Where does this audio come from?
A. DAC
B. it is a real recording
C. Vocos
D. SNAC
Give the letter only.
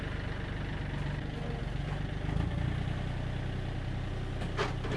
B